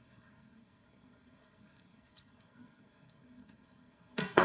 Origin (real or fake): fake